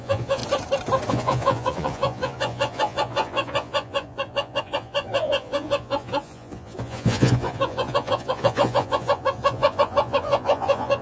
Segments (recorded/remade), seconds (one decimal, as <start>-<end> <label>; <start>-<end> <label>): 0.0-0.4 remade; 0.4-1.1 recorded; 1.1-11.0 remade

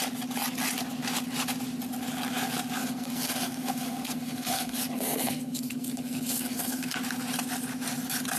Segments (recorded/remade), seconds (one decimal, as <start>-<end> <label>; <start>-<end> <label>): 0.0-2.8 recorded; 2.8-6.9 remade; 6.9-8.4 recorded